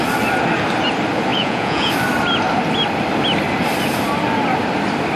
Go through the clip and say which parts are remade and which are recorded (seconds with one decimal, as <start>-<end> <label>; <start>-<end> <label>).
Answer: 0.0-1.3 recorded; 1.3-1.9 remade; 1.9-5.2 recorded